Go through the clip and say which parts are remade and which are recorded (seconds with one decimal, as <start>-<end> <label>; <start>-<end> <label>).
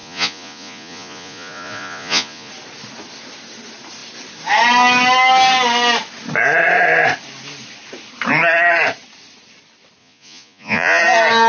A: 0.0-2.5 remade; 2.5-10.0 recorded; 10.0-11.0 remade; 11.0-11.5 recorded